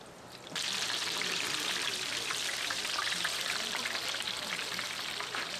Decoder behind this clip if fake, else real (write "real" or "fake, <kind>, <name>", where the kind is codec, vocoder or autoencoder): fake, vocoder, BigVGAN v2